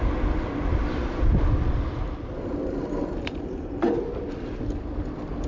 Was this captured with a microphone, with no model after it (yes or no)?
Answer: yes